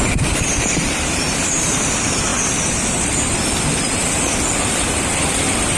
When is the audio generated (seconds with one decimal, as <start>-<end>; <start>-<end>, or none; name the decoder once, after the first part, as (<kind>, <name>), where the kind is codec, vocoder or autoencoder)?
0.0-5.8 (vocoder, BigVGAN v2)